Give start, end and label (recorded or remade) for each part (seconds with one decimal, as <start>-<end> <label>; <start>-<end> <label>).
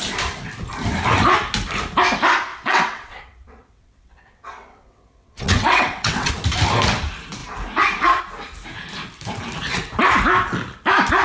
0.0-2.5 recorded; 2.5-6.3 remade; 6.3-11.2 recorded